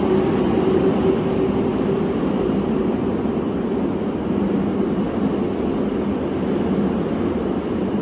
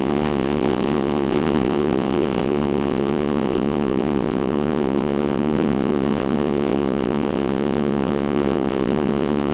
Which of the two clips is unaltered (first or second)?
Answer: first